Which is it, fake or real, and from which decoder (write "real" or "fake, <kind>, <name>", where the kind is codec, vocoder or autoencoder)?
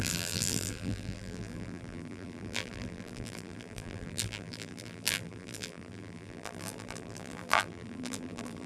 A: fake, vocoder, BigVGAN v2